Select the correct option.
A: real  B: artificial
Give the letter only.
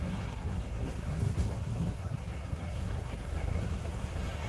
B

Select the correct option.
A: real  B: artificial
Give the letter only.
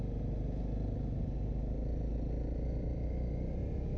A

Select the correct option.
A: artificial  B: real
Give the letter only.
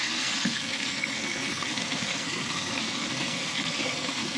A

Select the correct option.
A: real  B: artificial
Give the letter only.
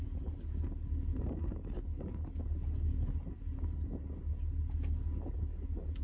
A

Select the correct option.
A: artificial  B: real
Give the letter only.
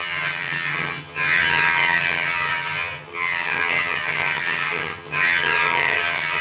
A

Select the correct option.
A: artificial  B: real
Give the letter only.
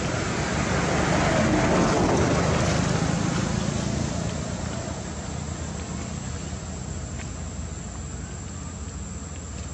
B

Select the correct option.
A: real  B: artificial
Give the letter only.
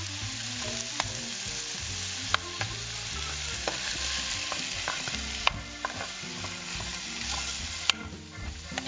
A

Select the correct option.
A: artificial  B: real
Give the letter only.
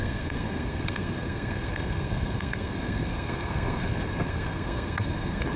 A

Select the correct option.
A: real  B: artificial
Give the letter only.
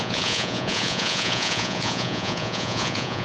B